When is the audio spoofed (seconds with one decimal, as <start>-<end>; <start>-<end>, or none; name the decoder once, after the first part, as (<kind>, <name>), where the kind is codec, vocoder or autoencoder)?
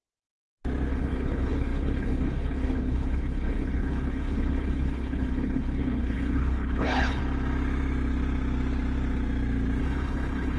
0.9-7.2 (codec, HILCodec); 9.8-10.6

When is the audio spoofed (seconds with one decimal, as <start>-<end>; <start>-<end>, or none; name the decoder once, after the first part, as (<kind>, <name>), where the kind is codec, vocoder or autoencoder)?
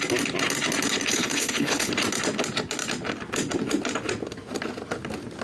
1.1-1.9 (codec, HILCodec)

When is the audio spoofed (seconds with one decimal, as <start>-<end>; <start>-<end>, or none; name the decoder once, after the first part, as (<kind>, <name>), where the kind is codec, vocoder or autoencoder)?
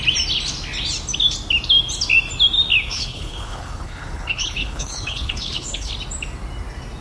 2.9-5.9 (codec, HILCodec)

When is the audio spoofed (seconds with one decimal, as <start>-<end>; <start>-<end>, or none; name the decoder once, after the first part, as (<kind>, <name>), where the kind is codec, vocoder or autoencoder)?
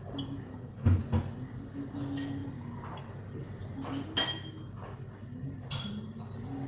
0.5-1.0 (codec, HILCodec)